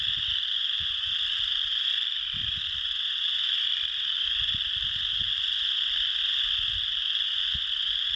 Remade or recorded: recorded